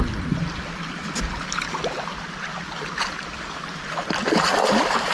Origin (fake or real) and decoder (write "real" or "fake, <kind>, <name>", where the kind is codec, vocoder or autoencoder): real